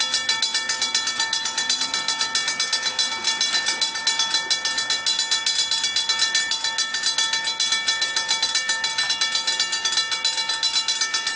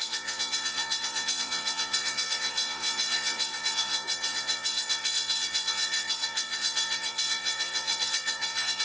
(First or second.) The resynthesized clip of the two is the second